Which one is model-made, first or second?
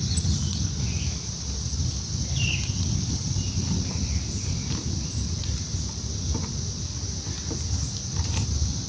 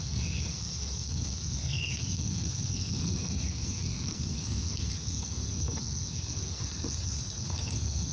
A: second